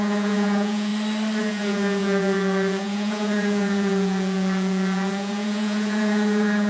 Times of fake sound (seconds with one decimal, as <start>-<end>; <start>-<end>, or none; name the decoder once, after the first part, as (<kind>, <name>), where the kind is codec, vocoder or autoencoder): 0.0-0.9 (vocoder, Vocos); 1.4-6.7